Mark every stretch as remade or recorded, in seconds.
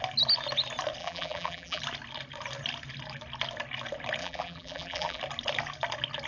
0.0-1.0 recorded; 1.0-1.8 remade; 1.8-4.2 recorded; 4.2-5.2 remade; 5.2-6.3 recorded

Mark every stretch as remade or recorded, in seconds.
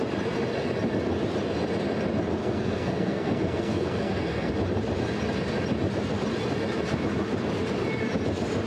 0.0-2.4 recorded; 2.4-4.5 remade; 4.5-8.7 recorded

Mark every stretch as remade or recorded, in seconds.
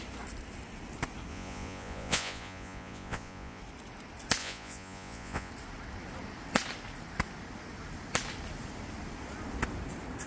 0.0-1.3 recorded; 1.3-3.6 remade; 3.6-4.4 recorded; 4.4-5.5 remade; 5.5-10.3 recorded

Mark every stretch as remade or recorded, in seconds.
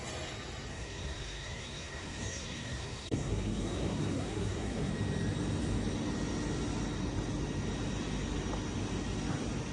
0.0-0.7 recorded; 0.7-4.9 remade; 4.9-9.7 recorded